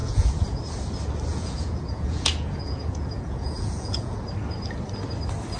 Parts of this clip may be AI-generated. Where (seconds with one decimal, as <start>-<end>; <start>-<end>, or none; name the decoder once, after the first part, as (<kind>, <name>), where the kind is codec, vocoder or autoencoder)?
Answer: 0.0-0.6 (vocoder, Vocos); 1.3-4.2